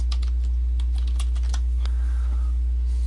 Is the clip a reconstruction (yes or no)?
no